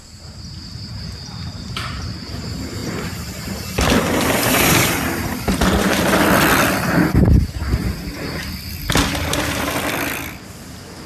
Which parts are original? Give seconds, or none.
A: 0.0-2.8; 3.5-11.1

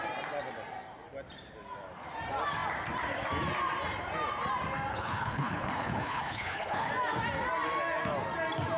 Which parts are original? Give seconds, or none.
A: 0.0-4.9; 6.9-8.8

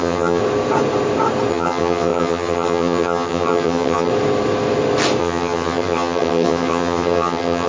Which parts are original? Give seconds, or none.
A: 0.4-1.5; 4.1-5.2

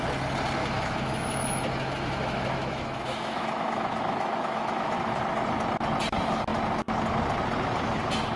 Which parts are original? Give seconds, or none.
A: 0.0-0.6; 5.2-8.4

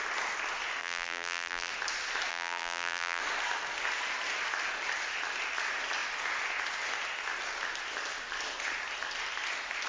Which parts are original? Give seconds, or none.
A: 0.0-0.8; 1.7-2.3; 3.2-9.9

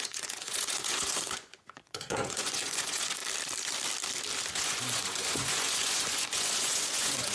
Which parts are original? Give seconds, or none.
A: 3.2-4.5

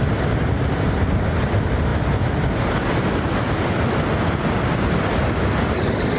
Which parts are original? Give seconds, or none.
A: 0.0-6.2

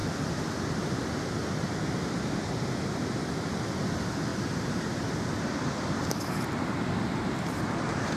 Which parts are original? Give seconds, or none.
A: 0.9-4.3; 5.2-8.2